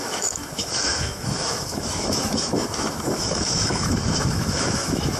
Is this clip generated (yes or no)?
yes